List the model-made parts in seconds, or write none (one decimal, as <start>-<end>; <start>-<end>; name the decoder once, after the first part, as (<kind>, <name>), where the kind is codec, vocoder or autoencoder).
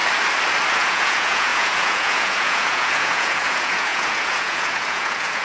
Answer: 0.7-5.4 (vocoder, Vocos)